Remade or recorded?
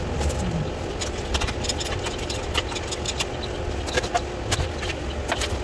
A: recorded